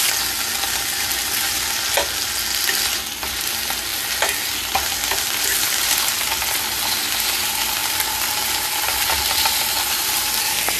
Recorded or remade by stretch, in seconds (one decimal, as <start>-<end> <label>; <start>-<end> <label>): 0.0-10.8 recorded